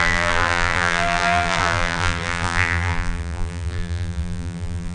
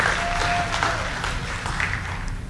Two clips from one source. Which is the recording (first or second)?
second